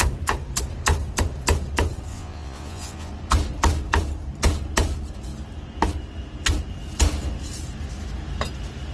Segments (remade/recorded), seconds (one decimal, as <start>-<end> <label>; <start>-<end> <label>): 0.0-2.1 recorded; 2.1-3.1 remade; 3.1-8.9 recorded